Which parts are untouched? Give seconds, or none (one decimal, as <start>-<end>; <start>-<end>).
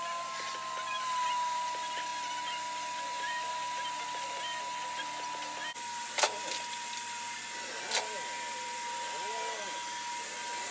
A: 0.0-10.7